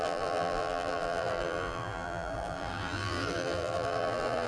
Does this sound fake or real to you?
fake